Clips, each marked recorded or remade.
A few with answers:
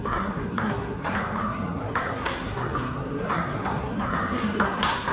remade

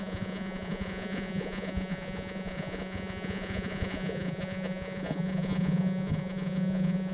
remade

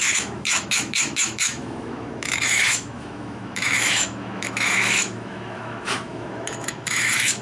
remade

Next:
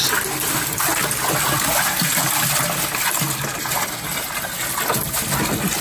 recorded